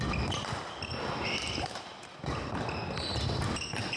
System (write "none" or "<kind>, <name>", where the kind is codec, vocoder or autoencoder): none